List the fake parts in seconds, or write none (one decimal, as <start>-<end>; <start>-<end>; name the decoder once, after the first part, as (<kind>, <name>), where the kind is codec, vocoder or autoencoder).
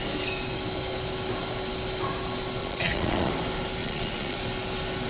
2.6-3.3 (vocoder, Vocos); 3.8-4.4